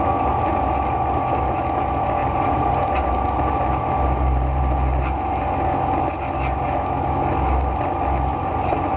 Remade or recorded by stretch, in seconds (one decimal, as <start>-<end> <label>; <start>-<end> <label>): 0.0-2.2 recorded; 2.2-4.6 remade; 4.6-9.0 recorded